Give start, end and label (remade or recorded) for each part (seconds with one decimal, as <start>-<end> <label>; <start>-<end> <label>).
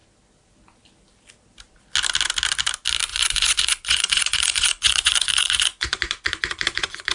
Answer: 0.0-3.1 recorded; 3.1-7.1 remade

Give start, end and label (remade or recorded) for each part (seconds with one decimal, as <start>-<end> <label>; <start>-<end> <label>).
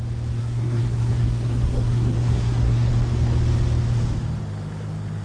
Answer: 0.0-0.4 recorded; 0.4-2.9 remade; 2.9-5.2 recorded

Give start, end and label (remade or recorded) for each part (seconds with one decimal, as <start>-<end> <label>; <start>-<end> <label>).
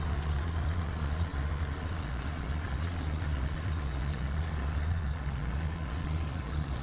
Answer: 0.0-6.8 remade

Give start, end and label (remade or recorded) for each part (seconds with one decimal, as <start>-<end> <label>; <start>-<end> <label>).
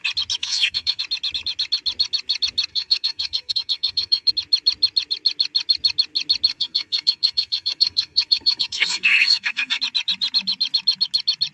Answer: 0.0-0.4 recorded; 0.4-1.0 remade; 1.0-2.7 recorded; 2.7-4.3 remade; 4.3-6.5 recorded; 6.5-9.8 remade; 9.8-11.5 recorded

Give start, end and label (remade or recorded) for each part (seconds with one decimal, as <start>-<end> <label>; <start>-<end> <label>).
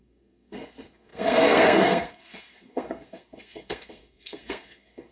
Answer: 0.0-5.1 remade